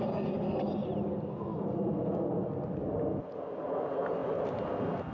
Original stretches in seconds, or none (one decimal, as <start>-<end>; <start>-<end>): 0.0-5.1